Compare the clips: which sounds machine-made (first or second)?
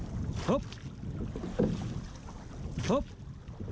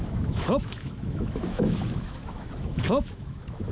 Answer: second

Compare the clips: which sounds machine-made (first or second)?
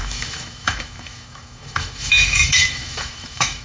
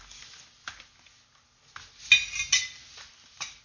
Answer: first